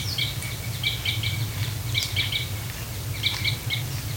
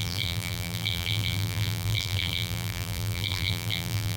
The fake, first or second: second